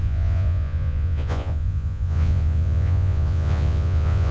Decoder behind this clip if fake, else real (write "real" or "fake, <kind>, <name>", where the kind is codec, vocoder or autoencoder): fake, vocoder, Vocos